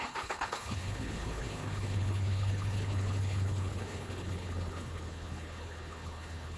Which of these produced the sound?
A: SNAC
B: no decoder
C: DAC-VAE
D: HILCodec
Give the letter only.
D